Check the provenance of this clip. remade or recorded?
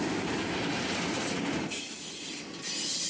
recorded